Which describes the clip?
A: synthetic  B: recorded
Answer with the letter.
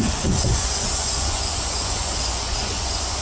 A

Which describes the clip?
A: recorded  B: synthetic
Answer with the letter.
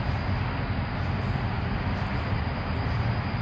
A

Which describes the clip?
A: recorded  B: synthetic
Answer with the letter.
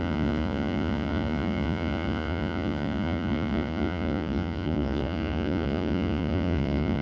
B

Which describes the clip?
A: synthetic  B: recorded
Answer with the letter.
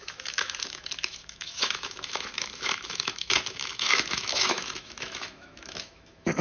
A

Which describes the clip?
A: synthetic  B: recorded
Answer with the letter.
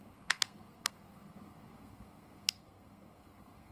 A